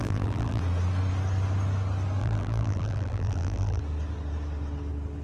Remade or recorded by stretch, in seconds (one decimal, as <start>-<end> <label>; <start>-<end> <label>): 0.0-0.6 remade; 0.6-2.2 recorded; 2.2-3.8 remade; 3.8-5.2 recorded